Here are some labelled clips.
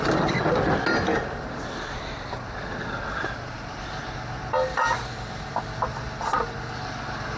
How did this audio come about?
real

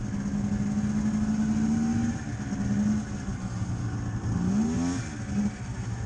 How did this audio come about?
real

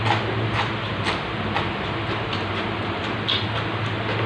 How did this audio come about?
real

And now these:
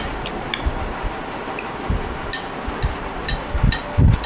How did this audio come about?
real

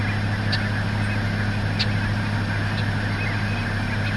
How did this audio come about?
real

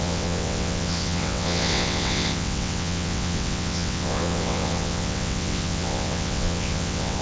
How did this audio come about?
fake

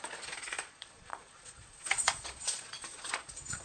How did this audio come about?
fake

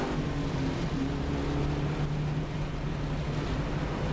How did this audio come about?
real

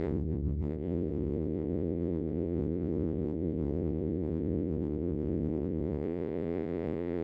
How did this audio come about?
fake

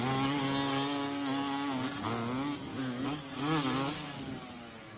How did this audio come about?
real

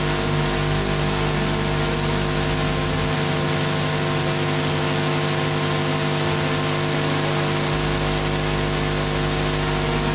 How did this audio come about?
real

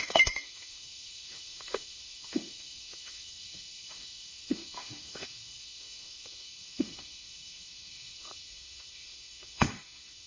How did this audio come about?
fake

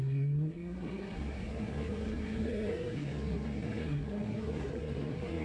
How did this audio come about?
fake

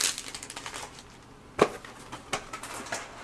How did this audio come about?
real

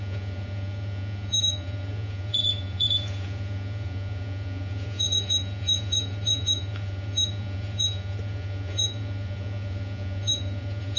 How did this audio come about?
fake